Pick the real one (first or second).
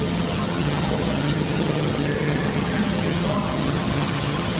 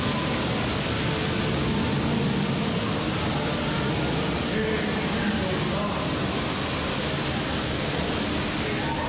second